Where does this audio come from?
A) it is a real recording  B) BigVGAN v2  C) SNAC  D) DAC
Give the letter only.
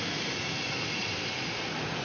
B